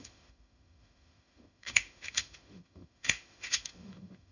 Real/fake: fake